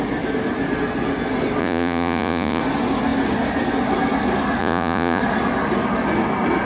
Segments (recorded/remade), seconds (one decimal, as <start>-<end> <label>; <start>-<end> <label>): 0.0-1.6 recorded; 1.6-2.6 remade; 2.6-4.6 recorded; 4.6-5.2 remade; 5.2-6.7 recorded